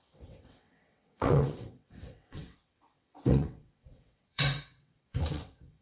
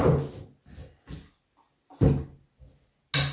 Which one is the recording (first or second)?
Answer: second